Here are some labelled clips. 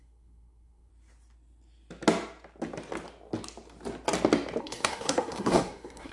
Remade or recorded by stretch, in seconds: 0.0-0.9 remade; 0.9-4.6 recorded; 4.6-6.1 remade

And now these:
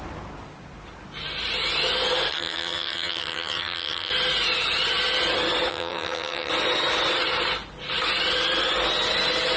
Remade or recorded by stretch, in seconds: 0.0-2.3 recorded; 2.3-4.1 remade; 4.1-5.7 recorded; 5.7-6.5 remade; 6.5-9.6 recorded